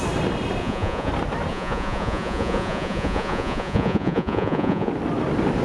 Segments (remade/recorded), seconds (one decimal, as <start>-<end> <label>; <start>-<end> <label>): 0.0-0.6 recorded; 0.6-1.1 remade; 1.1-1.5 recorded; 1.5-4.9 remade; 4.9-5.6 recorded